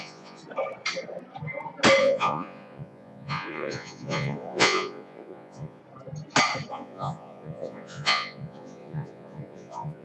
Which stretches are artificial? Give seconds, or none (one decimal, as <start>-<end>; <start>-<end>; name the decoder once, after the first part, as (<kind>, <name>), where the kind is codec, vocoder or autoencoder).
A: 0.0-0.4 (vocoder, Vocos); 2.0-5.8; 6.7-10.0